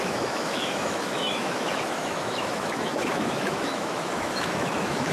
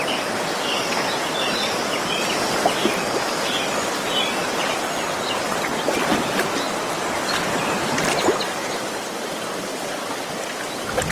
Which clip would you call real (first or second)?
second